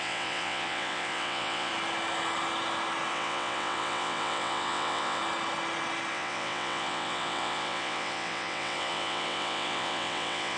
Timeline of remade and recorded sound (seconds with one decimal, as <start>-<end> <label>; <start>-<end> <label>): 0.0-1.7 remade; 1.7-3.1 recorded; 3.1-5.2 remade; 5.2-6.1 recorded; 6.1-10.6 remade

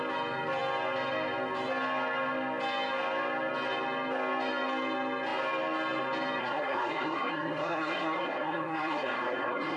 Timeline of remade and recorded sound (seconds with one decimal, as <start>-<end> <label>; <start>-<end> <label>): 0.0-6.4 recorded; 6.4-9.8 remade

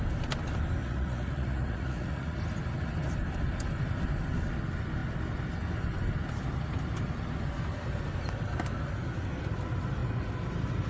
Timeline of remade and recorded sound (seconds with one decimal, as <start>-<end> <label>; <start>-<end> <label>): 0.0-0.8 recorded; 0.8-2.4 remade; 2.4-10.9 recorded